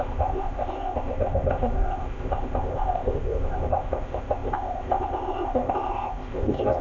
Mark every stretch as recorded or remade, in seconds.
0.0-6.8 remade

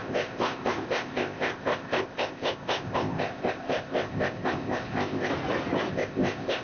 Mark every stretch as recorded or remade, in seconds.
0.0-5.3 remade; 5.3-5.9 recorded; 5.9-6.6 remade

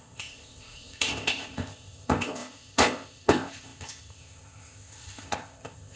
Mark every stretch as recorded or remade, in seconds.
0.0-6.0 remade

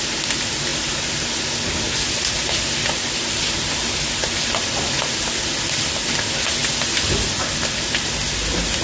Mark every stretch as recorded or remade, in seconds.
0.0-8.8 recorded

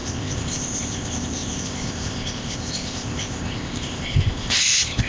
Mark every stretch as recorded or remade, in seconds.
0.0-5.1 remade